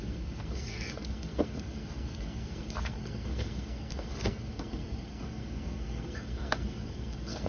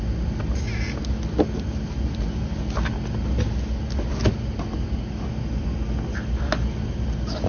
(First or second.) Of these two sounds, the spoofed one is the first